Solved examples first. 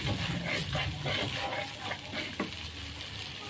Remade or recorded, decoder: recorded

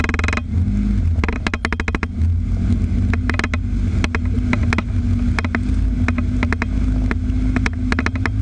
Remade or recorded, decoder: recorded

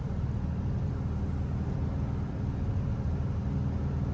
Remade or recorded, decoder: recorded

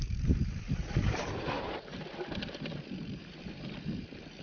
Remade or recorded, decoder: remade, vocoder, BigVGAN v2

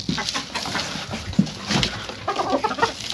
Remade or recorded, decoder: recorded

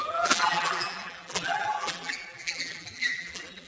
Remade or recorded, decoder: remade, vocoder, BigVGAN v2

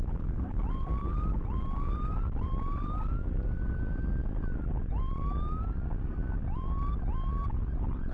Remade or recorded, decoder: remade, vocoder, BigVGAN v2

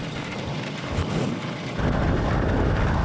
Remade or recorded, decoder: recorded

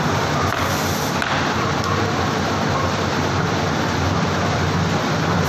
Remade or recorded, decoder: remade, vocoder, BigVGAN v2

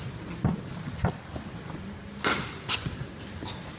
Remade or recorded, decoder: recorded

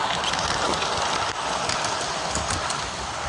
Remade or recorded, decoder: remade, vocoder, BigVGAN v2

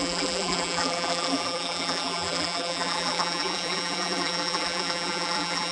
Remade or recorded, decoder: remade, vocoder, BigVGAN v2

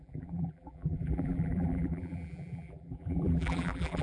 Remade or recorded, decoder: remade, vocoder, BigVGAN v2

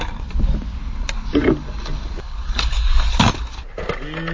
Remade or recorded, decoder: recorded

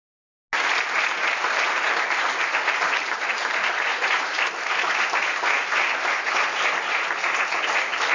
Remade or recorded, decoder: recorded